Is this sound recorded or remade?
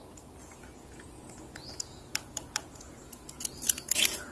remade